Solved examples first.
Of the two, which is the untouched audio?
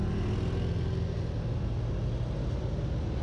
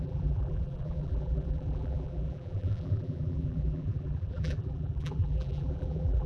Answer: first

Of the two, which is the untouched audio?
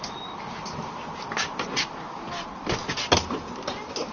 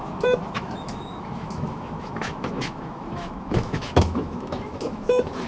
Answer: first